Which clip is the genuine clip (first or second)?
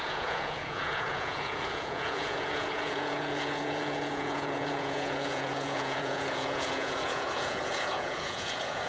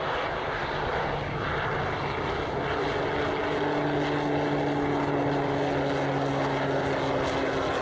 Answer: second